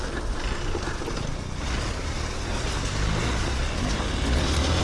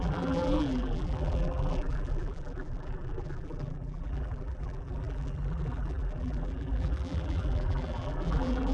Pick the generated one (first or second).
second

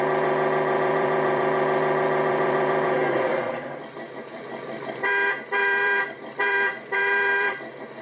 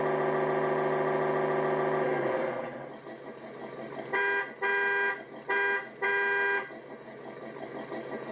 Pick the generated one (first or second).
first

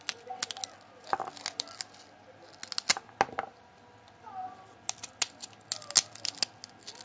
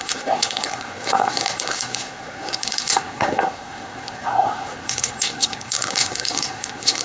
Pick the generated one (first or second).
second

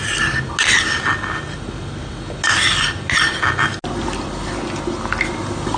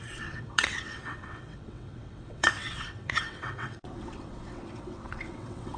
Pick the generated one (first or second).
second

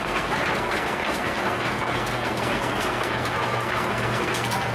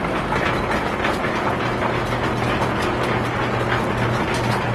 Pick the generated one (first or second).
first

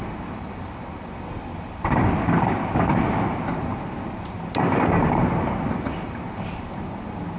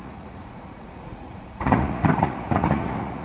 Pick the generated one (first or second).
second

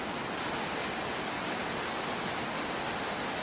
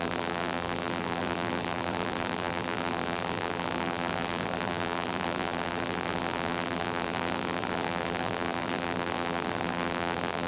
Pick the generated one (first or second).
second